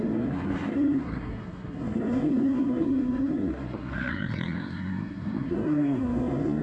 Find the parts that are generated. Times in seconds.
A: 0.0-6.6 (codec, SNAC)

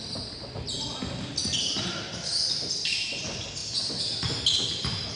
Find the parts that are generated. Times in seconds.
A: none

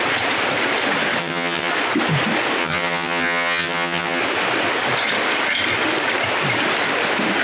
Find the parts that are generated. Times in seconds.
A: 1.2-1.7 (vocoder, HiFi-GAN); 2.6-4.2